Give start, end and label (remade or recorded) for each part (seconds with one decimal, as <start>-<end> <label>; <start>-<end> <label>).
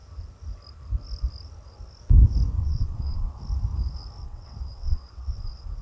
0.0-2.6 recorded; 2.6-3.4 remade; 3.4-4.2 recorded; 4.2-5.8 remade